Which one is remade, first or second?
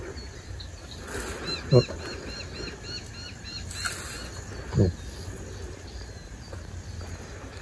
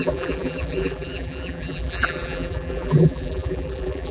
second